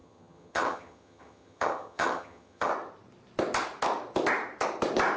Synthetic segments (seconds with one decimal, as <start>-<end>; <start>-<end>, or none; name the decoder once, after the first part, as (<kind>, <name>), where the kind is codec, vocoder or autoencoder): 0.0-2.7 (vocoder, HiFi-GAN)